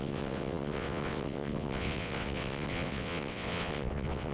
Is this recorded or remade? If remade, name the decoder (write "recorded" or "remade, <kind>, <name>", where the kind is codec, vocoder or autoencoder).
remade, vocoder, WaveNeXt